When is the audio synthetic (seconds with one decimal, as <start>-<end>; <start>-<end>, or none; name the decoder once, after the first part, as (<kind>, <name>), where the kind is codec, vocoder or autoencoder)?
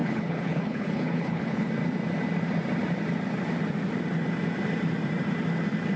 0.0-1.7 (codec, HILCodec)